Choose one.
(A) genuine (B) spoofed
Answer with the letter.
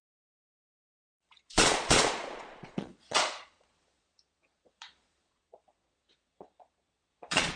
B